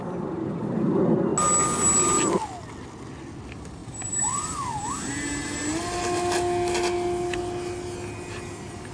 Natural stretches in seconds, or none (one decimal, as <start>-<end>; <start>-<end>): 0.0-3.8; 4.8-8.9